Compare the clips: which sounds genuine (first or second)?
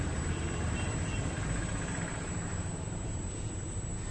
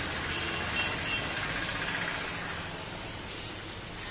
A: second